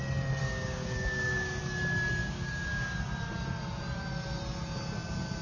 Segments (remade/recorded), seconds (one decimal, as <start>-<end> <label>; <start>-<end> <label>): 0.0-0.4 recorded; 0.4-1.6 remade; 1.6-2.2 recorded; 2.2-3.0 remade; 3.0-5.4 recorded